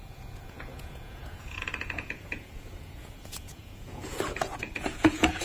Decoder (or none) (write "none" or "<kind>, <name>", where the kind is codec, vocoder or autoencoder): vocoder, Vocos